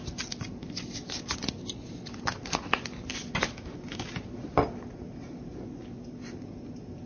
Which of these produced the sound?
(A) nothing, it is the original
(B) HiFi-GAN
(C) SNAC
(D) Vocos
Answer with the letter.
A